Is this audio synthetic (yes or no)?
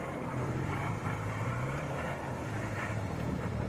yes